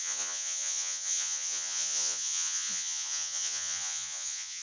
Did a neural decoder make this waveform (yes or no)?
yes